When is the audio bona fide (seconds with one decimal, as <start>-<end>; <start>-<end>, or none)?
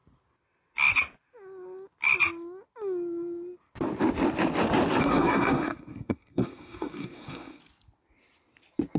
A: 0.0-5.0; 7.6-9.0